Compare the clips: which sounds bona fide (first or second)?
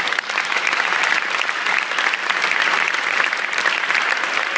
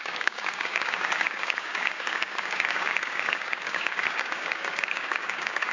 first